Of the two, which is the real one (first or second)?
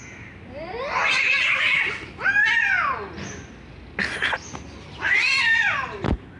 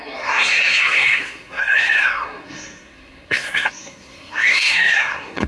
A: first